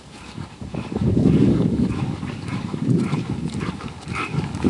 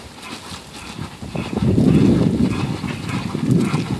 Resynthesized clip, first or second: first